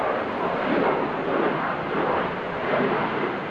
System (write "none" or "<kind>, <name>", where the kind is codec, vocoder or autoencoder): none